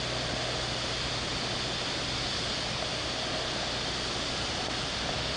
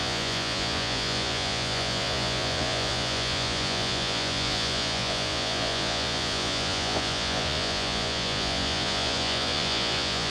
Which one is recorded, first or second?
first